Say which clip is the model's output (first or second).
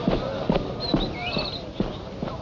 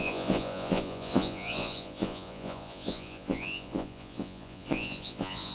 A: second